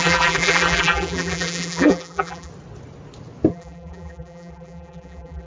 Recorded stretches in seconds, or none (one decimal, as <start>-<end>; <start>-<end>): 2.5-3.5